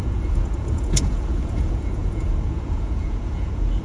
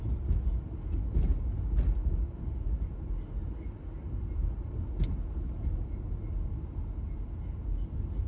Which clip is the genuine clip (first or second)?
second